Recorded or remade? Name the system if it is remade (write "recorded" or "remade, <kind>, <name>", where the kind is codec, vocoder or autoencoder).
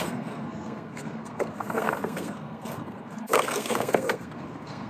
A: remade, codec, SNAC